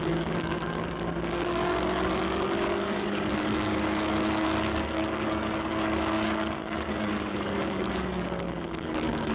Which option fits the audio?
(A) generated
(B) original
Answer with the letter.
A